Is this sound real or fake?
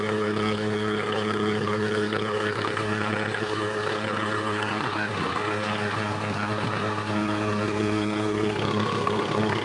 fake